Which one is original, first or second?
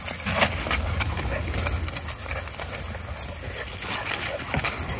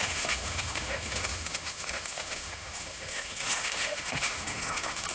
first